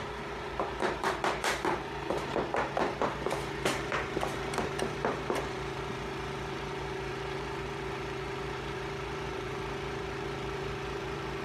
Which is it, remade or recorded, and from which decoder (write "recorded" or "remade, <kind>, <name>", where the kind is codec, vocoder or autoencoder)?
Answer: remade, vocoder, BigVGAN v2